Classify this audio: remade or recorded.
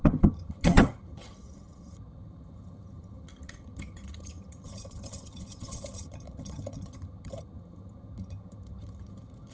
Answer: remade